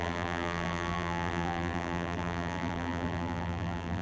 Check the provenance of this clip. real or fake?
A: fake